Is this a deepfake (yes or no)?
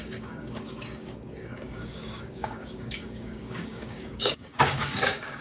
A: yes